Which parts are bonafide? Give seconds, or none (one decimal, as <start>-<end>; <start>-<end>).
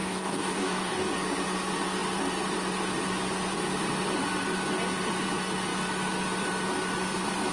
1.1-7.5